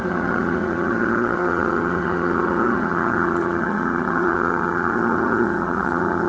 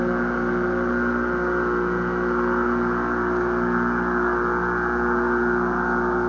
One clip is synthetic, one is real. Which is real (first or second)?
second